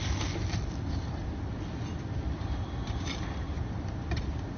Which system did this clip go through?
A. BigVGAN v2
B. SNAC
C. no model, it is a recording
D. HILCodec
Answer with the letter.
A